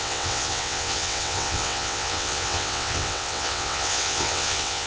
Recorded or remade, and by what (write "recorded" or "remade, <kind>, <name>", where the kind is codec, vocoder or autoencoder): remade, vocoder, WaveNeXt